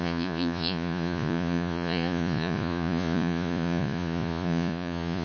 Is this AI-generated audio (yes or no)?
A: yes